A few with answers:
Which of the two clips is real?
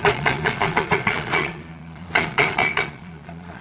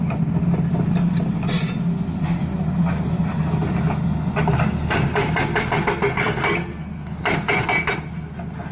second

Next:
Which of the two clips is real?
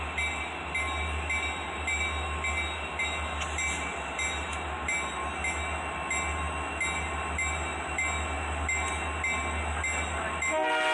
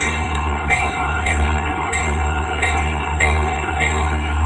first